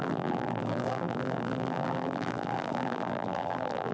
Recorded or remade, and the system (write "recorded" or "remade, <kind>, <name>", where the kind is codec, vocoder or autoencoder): remade, vocoder, BigVGAN v2